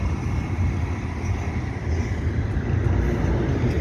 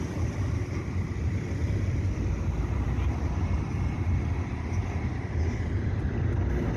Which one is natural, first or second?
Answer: first